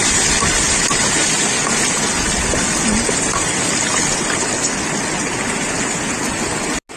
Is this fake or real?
real